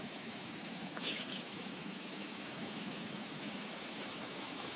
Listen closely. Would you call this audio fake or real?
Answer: fake